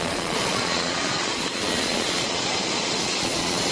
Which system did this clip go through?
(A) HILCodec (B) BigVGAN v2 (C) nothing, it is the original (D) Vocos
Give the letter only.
D